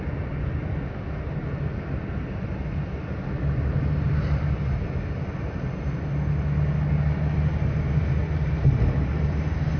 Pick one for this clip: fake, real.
real